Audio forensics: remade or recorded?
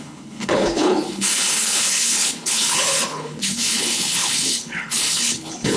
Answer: remade